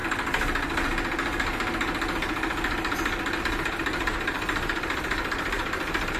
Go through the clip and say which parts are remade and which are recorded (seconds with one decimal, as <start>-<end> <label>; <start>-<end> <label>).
0.0-3.4 recorded; 3.4-6.2 remade